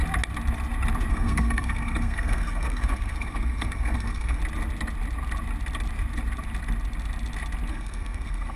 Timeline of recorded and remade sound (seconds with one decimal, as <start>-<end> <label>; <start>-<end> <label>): 0.0-1.1 recorded; 1.1-4.4 remade; 4.4-7.7 recorded; 7.7-8.6 remade